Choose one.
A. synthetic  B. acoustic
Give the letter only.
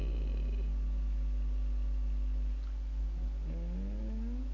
B